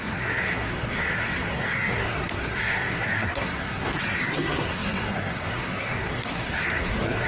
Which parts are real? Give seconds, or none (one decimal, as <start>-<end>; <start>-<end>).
none

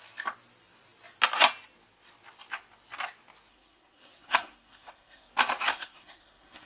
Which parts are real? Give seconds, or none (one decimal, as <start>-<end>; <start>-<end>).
0.0-3.5; 5.3-5.7

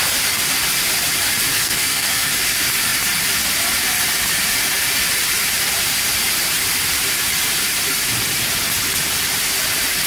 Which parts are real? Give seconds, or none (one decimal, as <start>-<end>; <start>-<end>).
0.0-1.5; 2.3-10.1

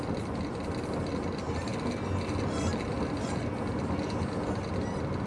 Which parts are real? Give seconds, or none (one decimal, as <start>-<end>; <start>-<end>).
0.0-5.3